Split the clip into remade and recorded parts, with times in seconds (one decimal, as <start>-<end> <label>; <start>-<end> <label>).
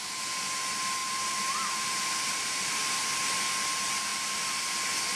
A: 0.0-1.0 recorded; 1.0-2.7 remade; 2.7-5.2 recorded